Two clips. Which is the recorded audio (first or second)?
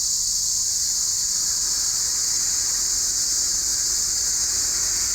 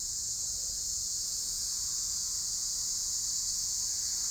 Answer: first